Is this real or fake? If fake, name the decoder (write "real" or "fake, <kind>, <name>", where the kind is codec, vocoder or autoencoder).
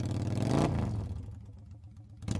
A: real